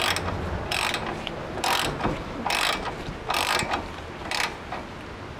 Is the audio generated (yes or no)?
no